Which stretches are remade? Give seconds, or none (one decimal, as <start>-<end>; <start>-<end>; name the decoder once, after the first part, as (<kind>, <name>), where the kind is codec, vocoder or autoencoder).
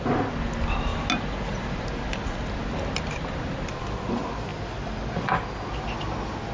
4.5-5.3 (vocoder, BigVGAN v2)